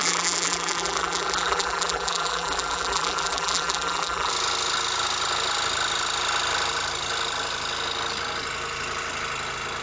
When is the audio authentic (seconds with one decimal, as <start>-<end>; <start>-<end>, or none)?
4.3-9.8